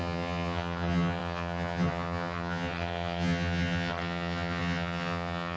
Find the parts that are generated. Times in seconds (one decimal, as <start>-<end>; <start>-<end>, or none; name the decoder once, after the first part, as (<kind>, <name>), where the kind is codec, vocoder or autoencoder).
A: 0.0-5.6 (vocoder, HiFi-GAN)